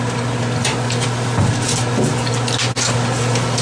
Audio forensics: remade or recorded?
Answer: recorded